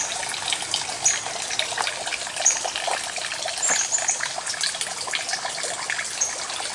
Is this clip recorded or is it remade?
recorded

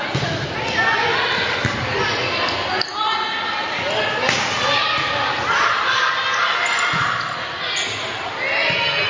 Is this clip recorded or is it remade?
recorded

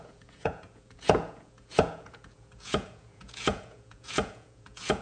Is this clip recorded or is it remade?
remade